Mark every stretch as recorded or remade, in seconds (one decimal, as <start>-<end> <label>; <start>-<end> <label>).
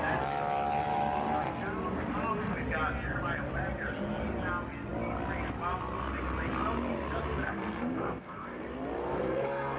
0.0-7.4 recorded; 7.4-8.6 remade; 8.6-9.0 recorded; 9.0-9.8 remade